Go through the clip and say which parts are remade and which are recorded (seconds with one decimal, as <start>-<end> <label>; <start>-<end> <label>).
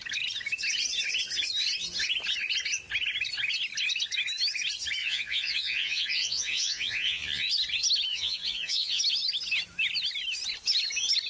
0.0-5.0 recorded; 5.0-7.5 remade; 7.5-8.1 recorded; 8.1-9.0 remade; 9.0-11.3 recorded